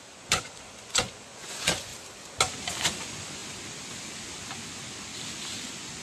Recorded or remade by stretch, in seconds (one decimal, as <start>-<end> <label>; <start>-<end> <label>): 0.0-1.9 remade; 1.9-2.8 recorded; 2.8-3.4 remade; 3.4-5.5 recorded; 5.5-6.0 remade